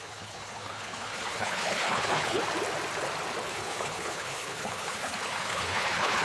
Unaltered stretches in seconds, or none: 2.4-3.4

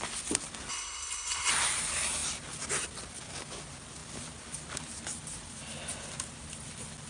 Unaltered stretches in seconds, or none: 0.0-0.7; 1.5-7.1

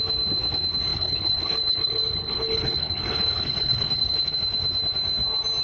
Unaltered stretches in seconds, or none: 0.0-0.9; 4.3-5.6

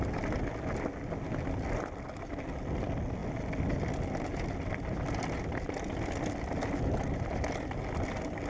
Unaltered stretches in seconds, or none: 0.0-8.5

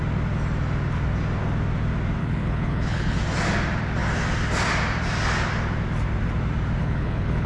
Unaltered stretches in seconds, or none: 0.0-2.2; 3.2-6.8

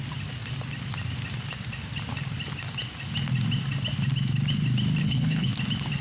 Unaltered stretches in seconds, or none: 0.0-5.0; 5.5-6.0